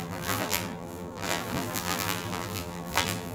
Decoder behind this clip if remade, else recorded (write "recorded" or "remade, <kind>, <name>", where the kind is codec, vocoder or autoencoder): remade, vocoder, BigVGAN v2